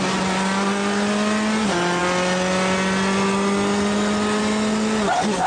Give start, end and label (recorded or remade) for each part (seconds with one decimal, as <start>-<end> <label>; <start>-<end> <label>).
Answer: 0.0-5.5 recorded